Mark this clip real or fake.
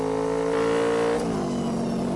real